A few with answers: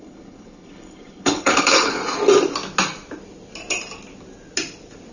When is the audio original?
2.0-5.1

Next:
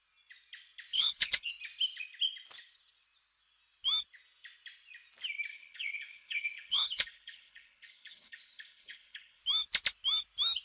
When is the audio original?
0.0-0.9; 1.5-5.5; 9.4-10.6

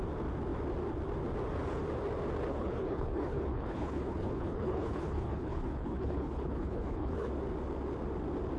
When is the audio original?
0.0-2.5; 7.3-8.6

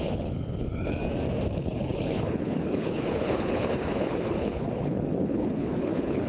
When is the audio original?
1.0-1.6

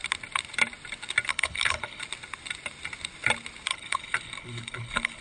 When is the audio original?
0.0-1.3; 2.0-3.7

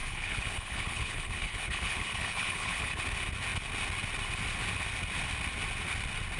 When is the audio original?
3.0-6.4

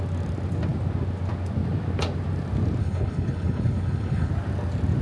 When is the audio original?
0.0-2.8; 4.3-5.0